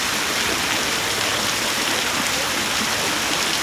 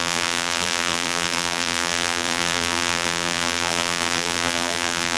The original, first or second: first